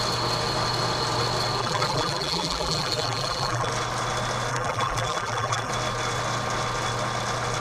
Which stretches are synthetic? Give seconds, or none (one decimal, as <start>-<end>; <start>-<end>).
1.6-3.7; 4.5-5.7